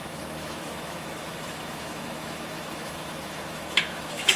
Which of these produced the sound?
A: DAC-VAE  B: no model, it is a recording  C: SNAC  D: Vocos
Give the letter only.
A